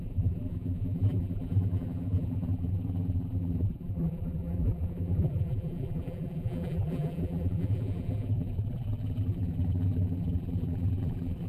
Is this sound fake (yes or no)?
yes